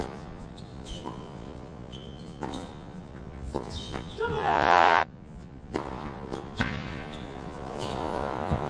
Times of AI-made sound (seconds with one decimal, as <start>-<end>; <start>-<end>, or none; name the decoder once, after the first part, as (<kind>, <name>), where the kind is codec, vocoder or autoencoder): 0.0-8.7 (vocoder, Vocos)